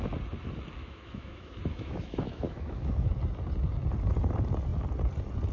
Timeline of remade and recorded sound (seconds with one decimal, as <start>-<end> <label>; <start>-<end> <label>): 0.0-0.8 recorded; 0.8-3.1 remade; 3.1-5.5 recorded